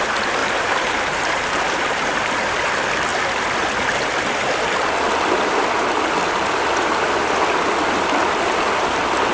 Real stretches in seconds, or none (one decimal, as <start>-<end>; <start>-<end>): 0.0-0.4; 1.8-9.3